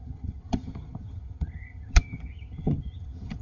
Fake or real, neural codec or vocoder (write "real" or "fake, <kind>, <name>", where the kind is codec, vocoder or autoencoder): fake, vocoder, HiFi-GAN